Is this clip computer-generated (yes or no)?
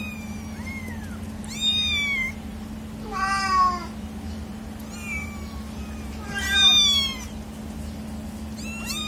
no